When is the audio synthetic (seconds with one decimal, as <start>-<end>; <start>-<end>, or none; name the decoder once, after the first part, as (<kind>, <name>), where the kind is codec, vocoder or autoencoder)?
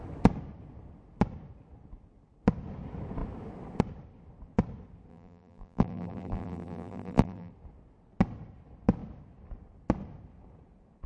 5.1-7.5 (vocoder, BigVGAN v2)